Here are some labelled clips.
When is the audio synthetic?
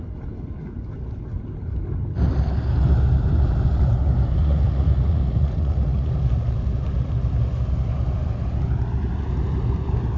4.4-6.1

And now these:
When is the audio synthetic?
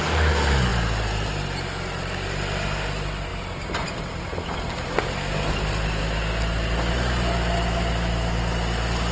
none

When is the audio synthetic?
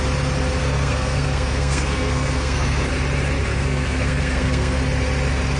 0.6-2.9; 3.4-4.8